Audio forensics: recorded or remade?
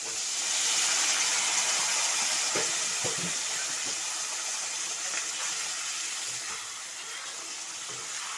recorded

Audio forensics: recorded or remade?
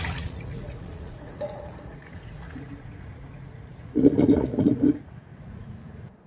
remade